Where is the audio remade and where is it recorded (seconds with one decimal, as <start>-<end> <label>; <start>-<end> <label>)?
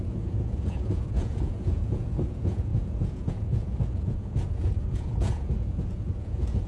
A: 0.0-6.7 remade